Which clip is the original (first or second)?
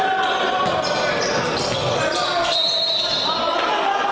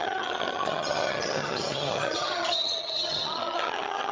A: first